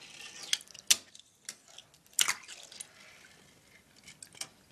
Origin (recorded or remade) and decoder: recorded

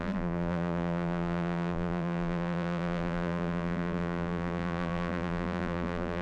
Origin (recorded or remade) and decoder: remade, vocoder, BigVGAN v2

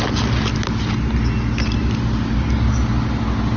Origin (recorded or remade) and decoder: recorded